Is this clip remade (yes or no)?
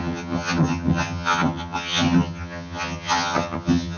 yes